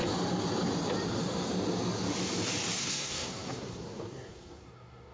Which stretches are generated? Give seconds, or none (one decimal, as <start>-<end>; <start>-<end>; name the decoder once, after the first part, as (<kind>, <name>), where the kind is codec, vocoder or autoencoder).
2.8-5.1 (codec, SNAC)